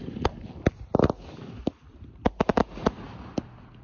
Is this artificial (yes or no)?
no